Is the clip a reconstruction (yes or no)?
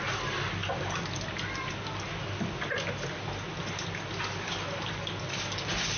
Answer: no